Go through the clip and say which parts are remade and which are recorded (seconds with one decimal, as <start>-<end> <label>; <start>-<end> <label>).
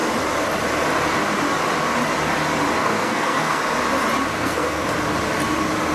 0.0-2.8 recorded; 2.8-3.6 remade; 3.6-4.3 recorded; 4.3-4.9 remade; 4.9-5.9 recorded